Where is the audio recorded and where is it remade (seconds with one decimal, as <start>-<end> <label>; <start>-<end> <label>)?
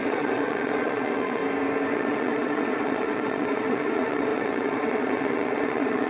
0.0-1.4 remade; 1.4-1.9 recorded; 1.9-6.1 remade